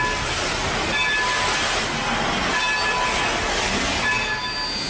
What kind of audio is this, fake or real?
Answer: real